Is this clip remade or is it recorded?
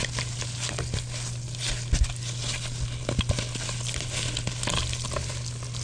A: recorded